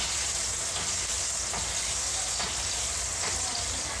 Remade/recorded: recorded